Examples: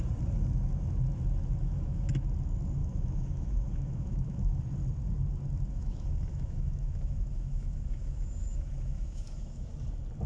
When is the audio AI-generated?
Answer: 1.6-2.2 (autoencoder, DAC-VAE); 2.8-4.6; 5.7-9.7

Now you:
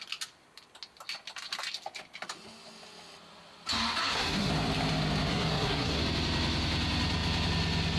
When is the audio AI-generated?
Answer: 4.0-4.5 (codec, SNAC); 5.3-6.0

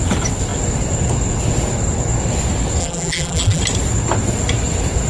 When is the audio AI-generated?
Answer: 2.8-3.6 (vocoder, BigVGAN v2)

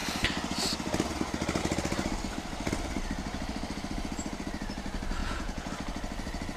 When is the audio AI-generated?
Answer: 5.2-5.7 (vocoder, Vocos)

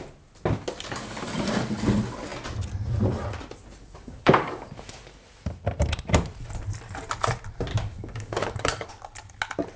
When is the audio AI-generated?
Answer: 3.8-4.7 (codec, DAC); 7.7-8.9